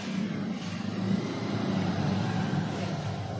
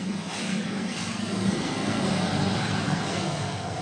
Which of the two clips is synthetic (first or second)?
second